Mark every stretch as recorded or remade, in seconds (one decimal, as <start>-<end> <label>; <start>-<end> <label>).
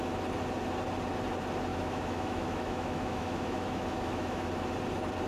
0.0-1.7 recorded; 1.7-4.5 remade; 4.5-5.3 recorded